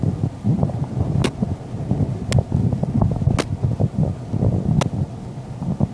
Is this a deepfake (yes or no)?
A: no